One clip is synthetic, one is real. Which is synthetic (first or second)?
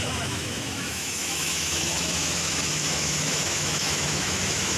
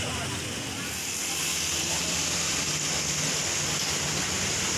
first